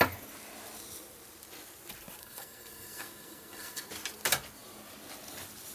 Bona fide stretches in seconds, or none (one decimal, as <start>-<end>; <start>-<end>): 0.0-2.2; 3.9-5.7